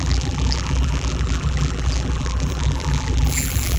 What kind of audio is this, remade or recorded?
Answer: remade